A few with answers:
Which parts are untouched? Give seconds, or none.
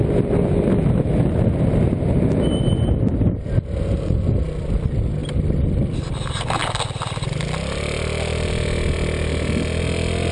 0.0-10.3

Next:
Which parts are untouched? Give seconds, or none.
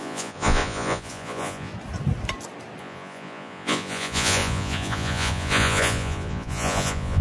1.7-2.8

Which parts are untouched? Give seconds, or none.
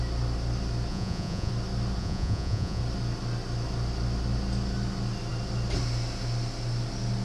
0.0-0.9; 1.5-2.0; 2.8-7.2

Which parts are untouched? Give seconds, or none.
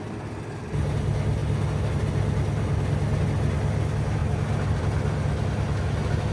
0.0-6.3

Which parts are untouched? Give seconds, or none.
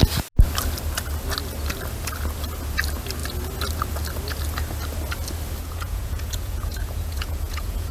0.0-5.6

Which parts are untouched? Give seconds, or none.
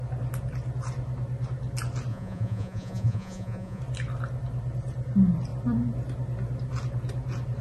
0.0-2.1; 3.8-7.6